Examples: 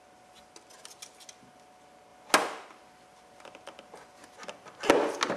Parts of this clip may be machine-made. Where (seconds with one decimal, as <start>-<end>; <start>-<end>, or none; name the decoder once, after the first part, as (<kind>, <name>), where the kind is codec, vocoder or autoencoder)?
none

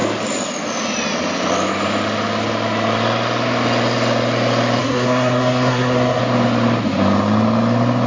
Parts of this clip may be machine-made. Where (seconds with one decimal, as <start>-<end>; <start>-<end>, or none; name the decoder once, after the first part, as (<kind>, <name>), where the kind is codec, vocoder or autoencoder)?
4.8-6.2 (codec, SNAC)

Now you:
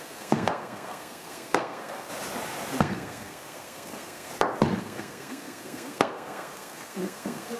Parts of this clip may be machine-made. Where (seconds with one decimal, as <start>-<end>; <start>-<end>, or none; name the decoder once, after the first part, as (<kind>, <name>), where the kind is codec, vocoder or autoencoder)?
0.0-2.1 (codec, SNAC); 2.8-4.3; 4.8-7.6